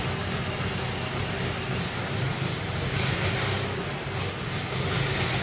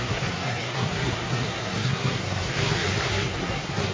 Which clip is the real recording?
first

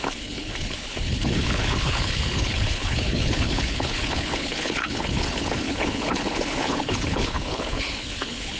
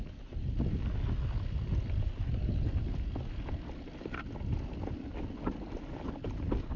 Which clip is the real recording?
second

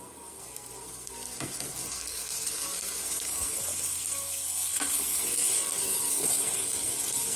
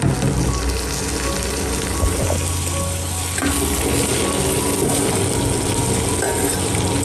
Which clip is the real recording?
second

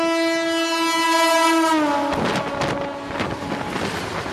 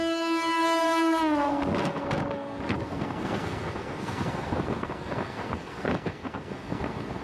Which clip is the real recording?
first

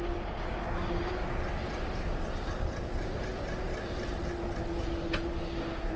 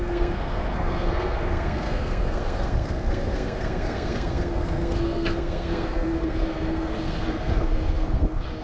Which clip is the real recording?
first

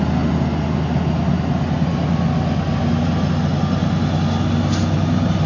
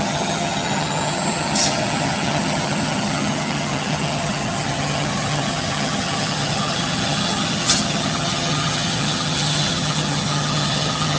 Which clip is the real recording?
first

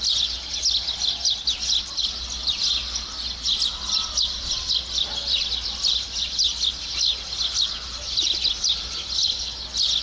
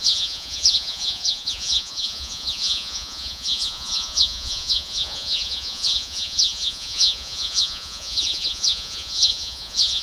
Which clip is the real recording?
first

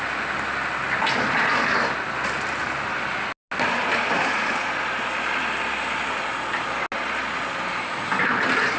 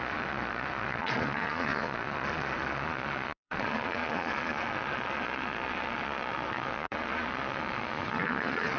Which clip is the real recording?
first